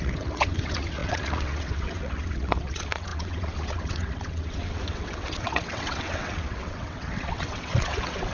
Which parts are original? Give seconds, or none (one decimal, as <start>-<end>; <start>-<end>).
none

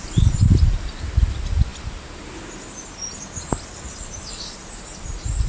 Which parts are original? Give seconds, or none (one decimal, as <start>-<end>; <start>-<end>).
0.0-5.5

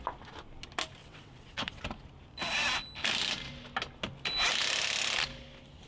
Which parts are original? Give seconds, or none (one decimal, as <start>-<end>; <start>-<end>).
0.0-1.0; 1.8-5.9